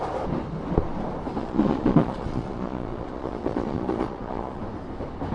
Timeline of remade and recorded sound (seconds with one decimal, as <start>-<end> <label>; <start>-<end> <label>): 0.0-1.4 recorded; 1.4-4.6 remade; 4.6-5.3 recorded